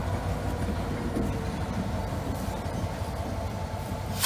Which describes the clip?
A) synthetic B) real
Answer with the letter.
A